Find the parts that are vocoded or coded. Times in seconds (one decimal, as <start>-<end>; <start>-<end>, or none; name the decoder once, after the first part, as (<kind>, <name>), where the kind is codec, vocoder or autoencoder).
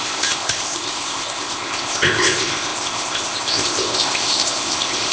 0.0-5.1 (codec, ZipCodec)